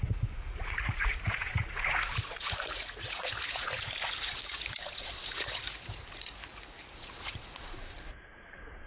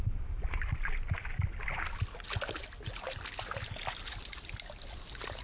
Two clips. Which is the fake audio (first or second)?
first